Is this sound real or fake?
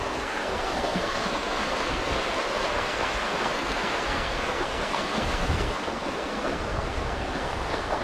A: fake